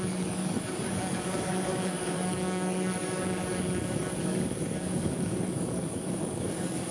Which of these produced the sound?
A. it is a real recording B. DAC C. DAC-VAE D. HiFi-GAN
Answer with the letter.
B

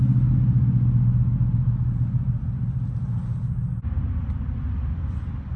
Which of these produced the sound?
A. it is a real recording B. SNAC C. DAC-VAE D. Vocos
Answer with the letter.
A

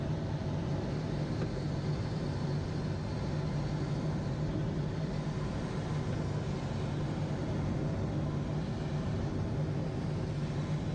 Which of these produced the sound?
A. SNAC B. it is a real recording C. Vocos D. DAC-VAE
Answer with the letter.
B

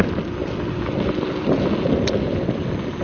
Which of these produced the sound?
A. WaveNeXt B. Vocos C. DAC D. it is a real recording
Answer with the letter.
D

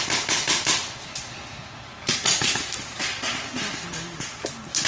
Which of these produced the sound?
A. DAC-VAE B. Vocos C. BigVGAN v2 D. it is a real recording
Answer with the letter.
D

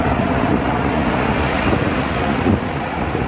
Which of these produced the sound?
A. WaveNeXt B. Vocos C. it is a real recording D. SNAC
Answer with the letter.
B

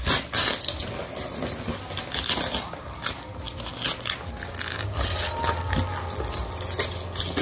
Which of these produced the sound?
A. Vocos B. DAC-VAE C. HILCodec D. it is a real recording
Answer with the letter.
D